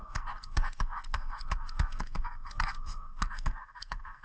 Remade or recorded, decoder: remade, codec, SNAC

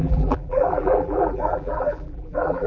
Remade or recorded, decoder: remade, vocoder, BigVGAN v2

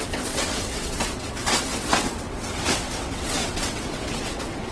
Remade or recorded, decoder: remade, vocoder, WaveNeXt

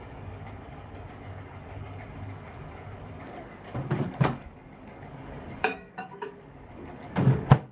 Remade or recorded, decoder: remade, codec, DAC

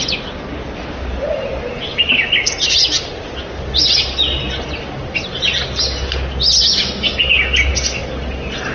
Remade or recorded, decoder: recorded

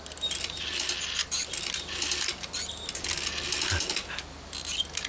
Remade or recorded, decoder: recorded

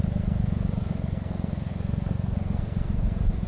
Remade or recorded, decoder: remade, codec, SNAC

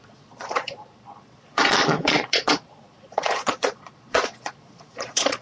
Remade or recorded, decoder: remade, vocoder, Vocos